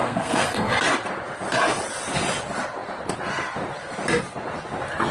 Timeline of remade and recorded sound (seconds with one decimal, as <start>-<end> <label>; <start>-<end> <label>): 0.0-0.8 remade; 0.8-5.1 recorded